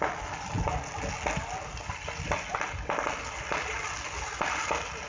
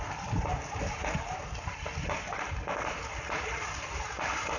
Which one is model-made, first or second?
second